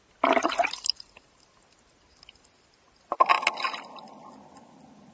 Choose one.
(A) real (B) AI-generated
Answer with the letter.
A